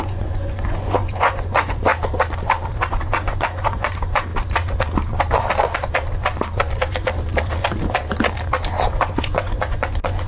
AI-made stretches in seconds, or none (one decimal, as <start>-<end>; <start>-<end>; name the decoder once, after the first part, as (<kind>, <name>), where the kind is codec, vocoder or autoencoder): 0.0-1.9 (vocoder, Vocos); 2.9-4.3; 9.0-10.3